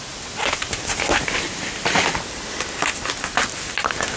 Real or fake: real